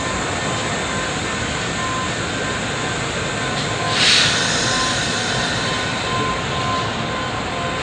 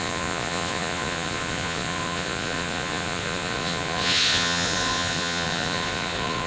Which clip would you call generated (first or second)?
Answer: second